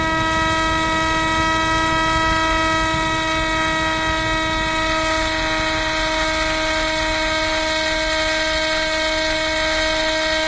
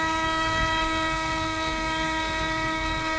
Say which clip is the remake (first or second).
second